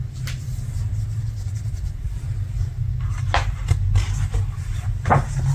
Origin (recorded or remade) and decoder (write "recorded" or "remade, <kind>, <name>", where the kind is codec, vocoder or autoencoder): recorded